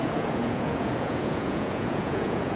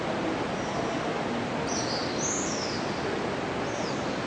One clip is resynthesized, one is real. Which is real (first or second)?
second